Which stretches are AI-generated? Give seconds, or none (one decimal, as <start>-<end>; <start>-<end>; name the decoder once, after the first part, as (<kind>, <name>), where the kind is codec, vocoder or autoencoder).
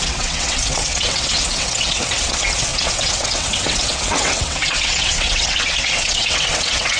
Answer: 0.0-7.0 (vocoder, WaveNeXt)